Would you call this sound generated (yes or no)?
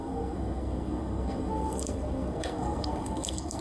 yes